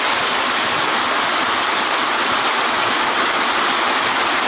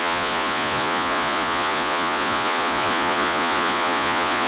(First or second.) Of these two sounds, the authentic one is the first